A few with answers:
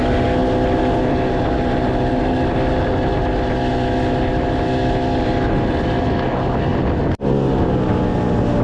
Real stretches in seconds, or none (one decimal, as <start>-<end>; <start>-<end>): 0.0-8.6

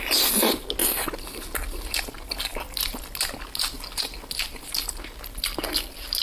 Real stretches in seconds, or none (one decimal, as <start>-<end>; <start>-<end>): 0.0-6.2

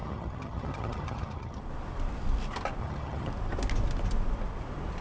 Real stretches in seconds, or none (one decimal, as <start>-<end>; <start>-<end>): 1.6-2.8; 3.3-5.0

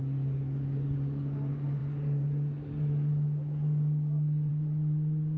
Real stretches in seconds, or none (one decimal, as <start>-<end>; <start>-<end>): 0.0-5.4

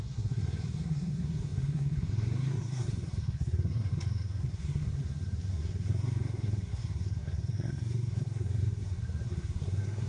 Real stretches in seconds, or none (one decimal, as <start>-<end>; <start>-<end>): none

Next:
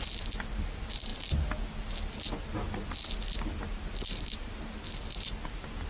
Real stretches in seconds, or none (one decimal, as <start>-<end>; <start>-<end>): 0.0-5.9